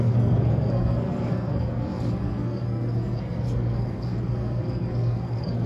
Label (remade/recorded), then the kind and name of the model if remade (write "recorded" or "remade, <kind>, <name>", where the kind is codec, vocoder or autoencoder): remade, codec, SNAC